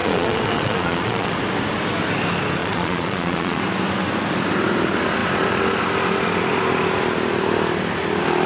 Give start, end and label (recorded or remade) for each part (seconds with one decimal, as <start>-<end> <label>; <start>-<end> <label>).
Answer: 0.0-1.3 remade; 1.3-2.6 recorded; 2.6-3.6 remade; 3.6-8.5 recorded